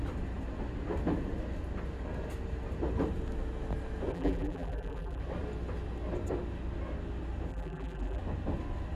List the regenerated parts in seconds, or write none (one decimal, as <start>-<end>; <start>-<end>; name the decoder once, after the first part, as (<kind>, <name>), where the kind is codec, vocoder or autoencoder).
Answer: 4.1-5.2 (vocoder, BigVGAN v2); 7.5-8.2